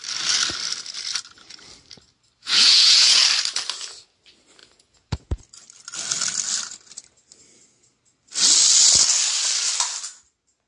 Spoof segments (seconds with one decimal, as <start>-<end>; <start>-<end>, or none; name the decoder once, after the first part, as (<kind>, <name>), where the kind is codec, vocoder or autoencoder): 2.4-3.2 (vocoder, Vocos); 4.6-5.4